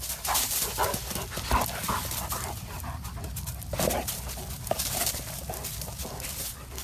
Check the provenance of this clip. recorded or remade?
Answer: recorded